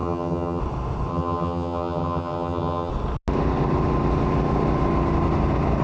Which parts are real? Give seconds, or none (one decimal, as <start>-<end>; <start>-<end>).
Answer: 0.6-1.1; 2.9-5.8